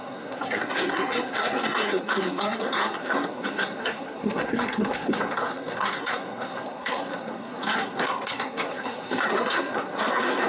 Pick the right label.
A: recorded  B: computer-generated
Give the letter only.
B